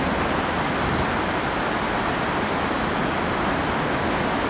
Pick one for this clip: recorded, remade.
recorded